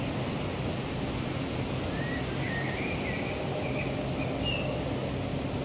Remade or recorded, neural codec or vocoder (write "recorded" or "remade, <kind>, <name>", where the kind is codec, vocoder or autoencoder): recorded